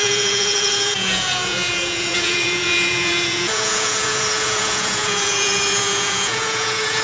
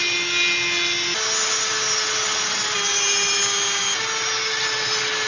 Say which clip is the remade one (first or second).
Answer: first